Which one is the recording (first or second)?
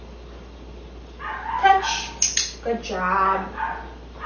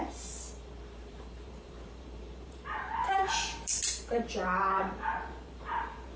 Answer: first